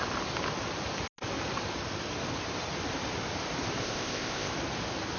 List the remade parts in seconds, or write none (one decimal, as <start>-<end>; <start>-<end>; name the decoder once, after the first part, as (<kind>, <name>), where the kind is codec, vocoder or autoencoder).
3.8-4.5 (codec, ZipCodec)